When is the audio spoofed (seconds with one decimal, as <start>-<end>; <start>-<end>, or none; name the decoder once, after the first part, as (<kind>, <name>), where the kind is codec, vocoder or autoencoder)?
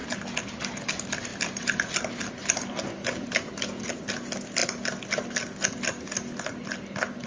none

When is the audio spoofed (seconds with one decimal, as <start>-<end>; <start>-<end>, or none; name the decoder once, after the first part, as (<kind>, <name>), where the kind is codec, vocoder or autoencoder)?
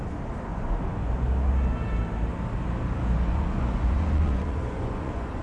0.5-1.1 (vocoder, Vocos); 3.0-5.4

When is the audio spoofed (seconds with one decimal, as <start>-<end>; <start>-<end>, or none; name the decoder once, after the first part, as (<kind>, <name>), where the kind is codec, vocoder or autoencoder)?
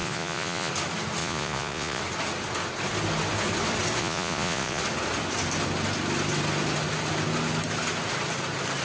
0.0-0.7 (vocoder, Vocos); 1.2-2.0; 4.0-4.8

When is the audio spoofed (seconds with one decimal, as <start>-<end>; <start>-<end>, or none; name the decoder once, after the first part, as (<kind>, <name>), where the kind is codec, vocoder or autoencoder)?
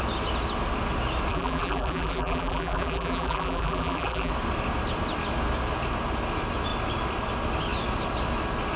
1.3-4.3 (vocoder, BigVGAN v2)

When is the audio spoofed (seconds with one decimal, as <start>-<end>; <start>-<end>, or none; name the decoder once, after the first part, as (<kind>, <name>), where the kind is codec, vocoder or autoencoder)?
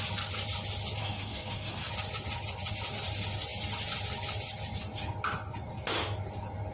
1.0-1.9 (codec, DAC)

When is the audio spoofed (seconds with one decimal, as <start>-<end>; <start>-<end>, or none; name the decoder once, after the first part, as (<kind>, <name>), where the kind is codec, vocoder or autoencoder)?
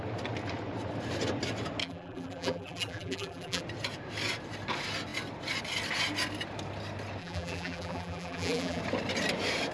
1.8-3.6 (vocoder, BigVGAN v2); 7.2-8.8